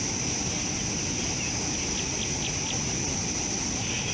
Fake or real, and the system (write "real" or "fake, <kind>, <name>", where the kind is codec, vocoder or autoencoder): real